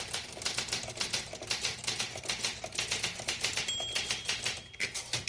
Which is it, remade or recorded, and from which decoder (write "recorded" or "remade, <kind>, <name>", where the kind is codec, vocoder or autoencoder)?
recorded